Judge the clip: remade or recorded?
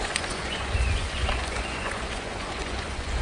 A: remade